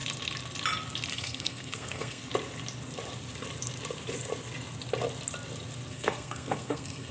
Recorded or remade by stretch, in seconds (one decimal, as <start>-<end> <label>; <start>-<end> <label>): 0.0-1.1 recorded; 1.1-2.3 remade; 2.3-5.9 recorded; 5.9-7.1 remade